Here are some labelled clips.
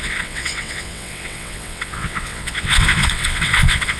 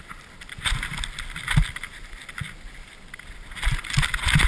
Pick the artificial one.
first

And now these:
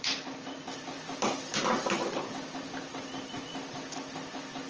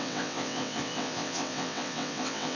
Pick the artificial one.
second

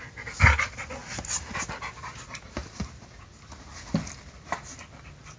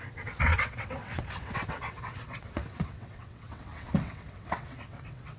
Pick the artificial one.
second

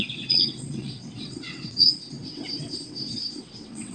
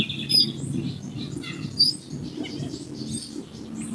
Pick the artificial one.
first